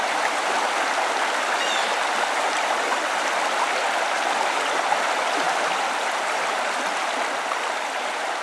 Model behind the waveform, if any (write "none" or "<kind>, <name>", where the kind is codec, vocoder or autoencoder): none